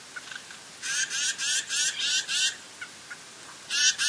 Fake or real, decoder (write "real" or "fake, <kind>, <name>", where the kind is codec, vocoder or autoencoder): real